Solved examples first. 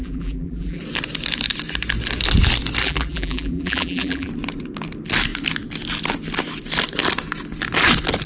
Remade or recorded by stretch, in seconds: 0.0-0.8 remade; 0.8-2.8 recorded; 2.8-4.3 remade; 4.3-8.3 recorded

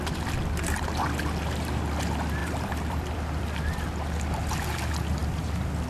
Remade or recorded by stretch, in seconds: 0.0-2.4 recorded; 2.4-3.4 remade; 3.4-5.2 recorded; 5.2-5.9 remade

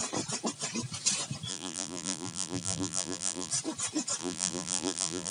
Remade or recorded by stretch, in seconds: 0.0-1.5 recorded; 1.5-3.5 remade; 3.5-4.2 recorded; 4.2-5.3 remade

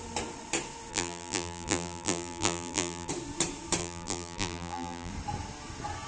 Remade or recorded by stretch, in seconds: 0.0-0.9 recorded; 0.9-3.1 remade; 3.1-3.8 recorded; 3.8-5.1 remade; 5.1-6.1 recorded

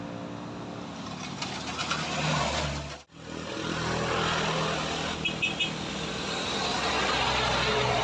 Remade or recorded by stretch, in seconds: 0.0-8.0 recorded

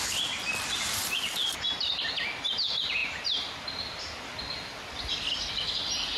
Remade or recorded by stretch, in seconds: 0.0-1.4 recorded; 1.4-2.1 remade; 2.1-6.2 recorded

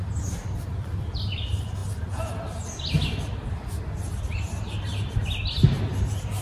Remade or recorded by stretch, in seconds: 0.0-6.4 recorded